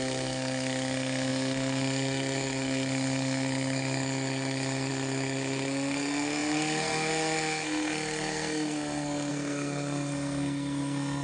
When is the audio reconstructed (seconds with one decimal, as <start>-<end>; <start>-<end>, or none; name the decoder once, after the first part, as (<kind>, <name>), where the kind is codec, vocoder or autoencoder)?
0.0-11.2 (codec, SNAC)